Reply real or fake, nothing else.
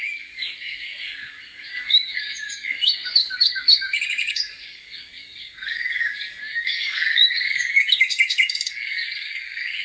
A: fake